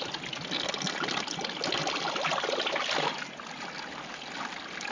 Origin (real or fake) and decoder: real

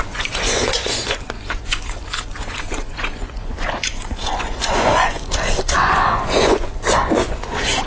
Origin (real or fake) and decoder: fake, vocoder, Vocos